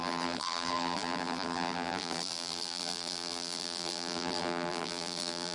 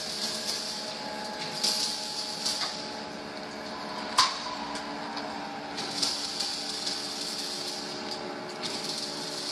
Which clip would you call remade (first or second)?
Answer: first